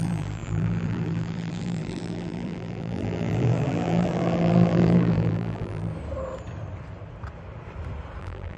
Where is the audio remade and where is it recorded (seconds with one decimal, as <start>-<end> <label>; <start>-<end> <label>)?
0.0-5.9 remade; 5.9-8.2 recorded; 8.2-8.6 remade